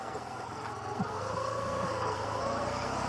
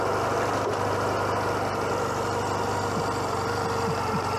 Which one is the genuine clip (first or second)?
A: second